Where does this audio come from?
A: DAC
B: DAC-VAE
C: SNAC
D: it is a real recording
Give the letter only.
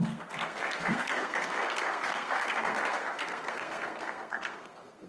C